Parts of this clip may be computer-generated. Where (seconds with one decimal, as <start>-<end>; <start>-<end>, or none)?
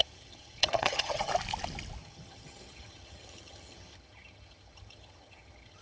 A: 0.0-1.3; 2.0-5.8